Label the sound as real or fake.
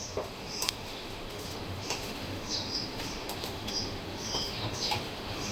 fake